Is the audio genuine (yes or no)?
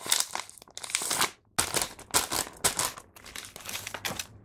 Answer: yes